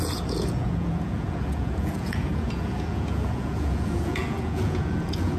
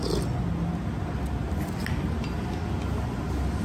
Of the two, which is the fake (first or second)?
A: first